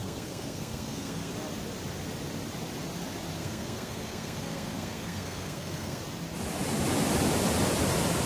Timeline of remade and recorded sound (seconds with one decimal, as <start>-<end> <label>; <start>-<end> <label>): 0.0-1.3 remade; 1.3-3.4 recorded; 3.4-6.0 remade; 6.0-8.3 recorded